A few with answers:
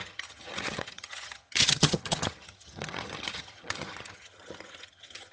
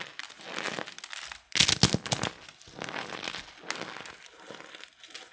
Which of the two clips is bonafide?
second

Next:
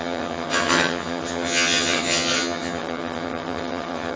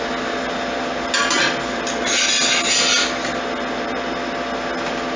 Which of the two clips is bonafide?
second